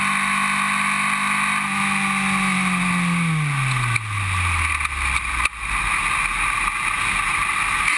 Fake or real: real